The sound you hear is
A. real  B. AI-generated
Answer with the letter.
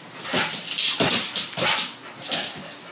A